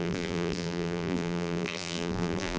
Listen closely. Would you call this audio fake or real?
fake